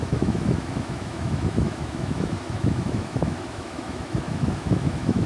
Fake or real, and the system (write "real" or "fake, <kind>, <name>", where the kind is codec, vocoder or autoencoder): fake, autoencoder, DAC-VAE